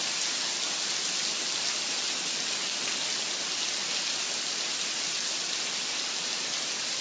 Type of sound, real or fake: real